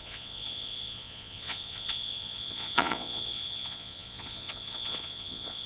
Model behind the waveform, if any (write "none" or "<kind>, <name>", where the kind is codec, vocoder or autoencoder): vocoder, Vocos